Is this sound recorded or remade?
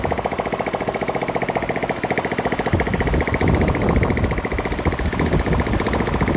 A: recorded